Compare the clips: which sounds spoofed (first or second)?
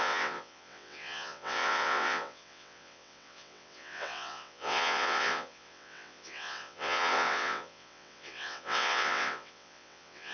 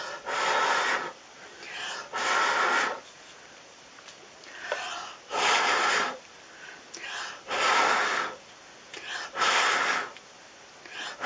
first